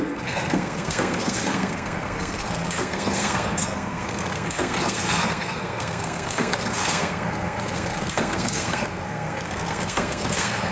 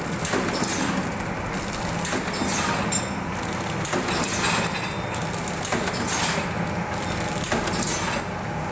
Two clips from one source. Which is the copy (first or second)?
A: first